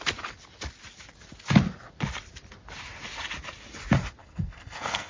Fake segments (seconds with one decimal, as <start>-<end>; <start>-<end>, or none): 4.2-5.1